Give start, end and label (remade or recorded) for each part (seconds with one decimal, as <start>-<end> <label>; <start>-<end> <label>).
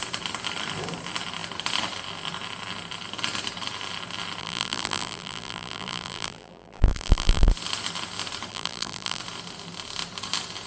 0.0-4.4 recorded; 4.4-7.5 remade; 7.5-8.5 recorded; 8.5-9.2 remade; 9.2-10.7 recorded